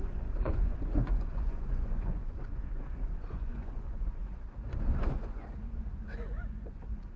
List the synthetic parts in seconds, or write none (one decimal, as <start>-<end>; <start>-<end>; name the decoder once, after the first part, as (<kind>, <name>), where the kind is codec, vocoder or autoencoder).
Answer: 0.0-4.2 (vocoder, Vocos); 4.9-7.2